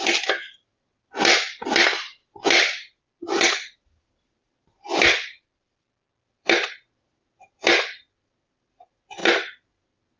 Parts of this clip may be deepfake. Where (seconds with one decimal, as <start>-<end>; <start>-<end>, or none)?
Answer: none